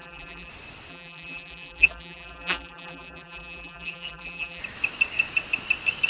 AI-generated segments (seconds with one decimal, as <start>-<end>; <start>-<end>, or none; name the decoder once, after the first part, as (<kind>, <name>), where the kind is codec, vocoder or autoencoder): 0.0-0.5 (vocoder, BigVGAN v2); 0.9-4.6